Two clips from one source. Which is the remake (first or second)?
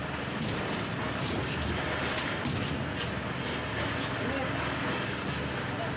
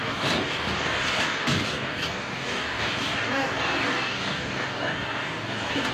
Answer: second